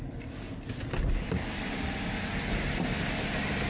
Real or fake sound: real